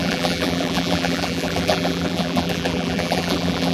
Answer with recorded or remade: remade